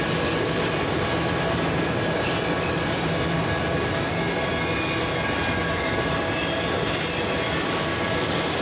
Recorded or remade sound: recorded